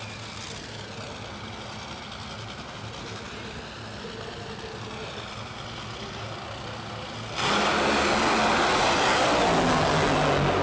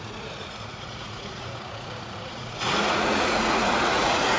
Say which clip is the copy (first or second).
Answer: second